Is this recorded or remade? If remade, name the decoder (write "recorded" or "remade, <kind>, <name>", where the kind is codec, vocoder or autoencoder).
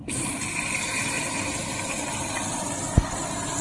recorded